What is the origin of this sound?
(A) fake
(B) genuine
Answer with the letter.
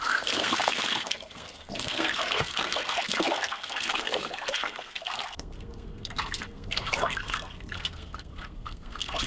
A